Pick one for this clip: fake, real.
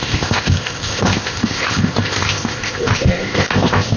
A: fake